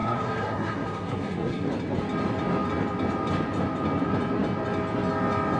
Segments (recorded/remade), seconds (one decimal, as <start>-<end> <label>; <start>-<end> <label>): 0.0-1.7 remade; 1.7-5.6 recorded